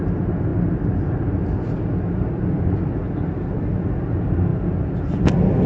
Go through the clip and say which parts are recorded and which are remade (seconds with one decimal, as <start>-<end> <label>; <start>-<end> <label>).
0.0-5.7 recorded